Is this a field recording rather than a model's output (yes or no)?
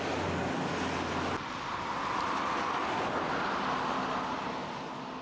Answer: yes